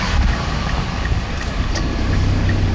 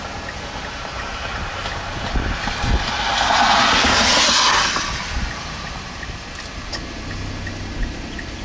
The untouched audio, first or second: second